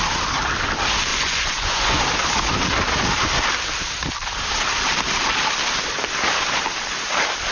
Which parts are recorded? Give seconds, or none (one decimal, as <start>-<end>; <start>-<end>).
0.0-1.1; 2.0-7.5